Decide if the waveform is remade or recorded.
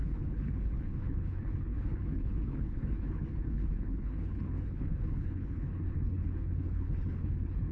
remade